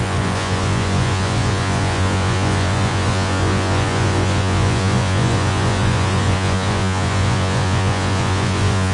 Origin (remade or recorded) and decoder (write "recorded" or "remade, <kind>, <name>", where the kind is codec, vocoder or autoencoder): remade, vocoder, Vocos